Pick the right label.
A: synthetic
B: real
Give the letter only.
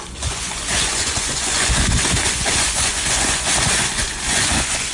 A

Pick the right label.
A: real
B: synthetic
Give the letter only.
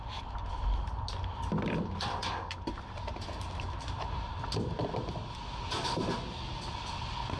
A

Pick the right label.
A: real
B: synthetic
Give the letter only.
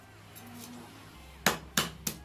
A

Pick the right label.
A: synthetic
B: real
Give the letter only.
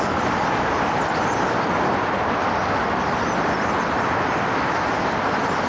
B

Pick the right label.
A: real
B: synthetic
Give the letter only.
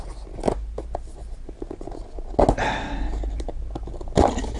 A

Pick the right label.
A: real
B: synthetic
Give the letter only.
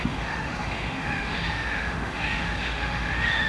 B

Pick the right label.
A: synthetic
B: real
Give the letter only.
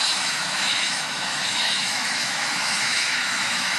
A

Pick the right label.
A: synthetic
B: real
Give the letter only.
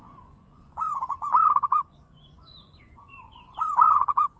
A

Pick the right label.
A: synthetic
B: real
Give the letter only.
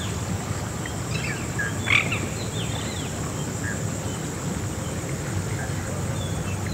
B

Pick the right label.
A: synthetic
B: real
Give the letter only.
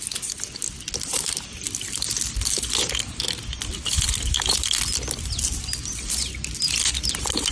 B